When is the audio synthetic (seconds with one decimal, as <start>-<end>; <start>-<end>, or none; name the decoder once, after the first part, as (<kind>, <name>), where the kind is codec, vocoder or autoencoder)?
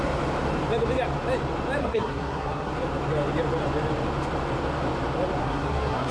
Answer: 1.8-2.7 (codec, SNAC); 5.4-6.1